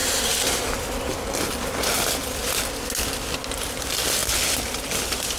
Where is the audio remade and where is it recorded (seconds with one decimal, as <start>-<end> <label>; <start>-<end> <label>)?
0.0-0.6 remade; 0.6-5.4 recorded